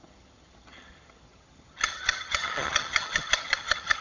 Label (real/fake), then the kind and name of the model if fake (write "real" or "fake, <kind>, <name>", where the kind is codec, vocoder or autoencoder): fake, vocoder, HiFi-GAN